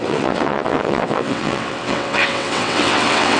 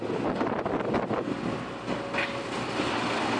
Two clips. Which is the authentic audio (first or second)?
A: second